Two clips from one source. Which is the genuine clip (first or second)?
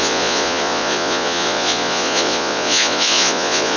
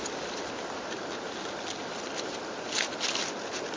second